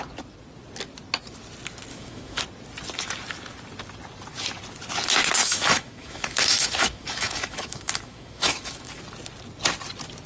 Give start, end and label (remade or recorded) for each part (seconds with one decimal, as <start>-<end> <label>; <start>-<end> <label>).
0.0-1.9 recorded; 1.9-2.4 remade; 2.4-5.4 recorded; 5.4-9.0 remade; 9.0-10.3 recorded